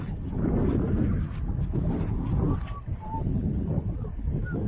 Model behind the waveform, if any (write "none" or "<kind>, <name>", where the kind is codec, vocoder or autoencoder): none